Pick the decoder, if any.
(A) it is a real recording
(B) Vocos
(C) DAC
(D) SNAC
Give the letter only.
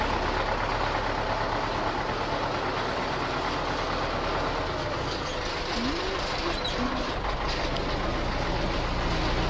A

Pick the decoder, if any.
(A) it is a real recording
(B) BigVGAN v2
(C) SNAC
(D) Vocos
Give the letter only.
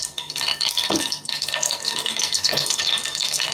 C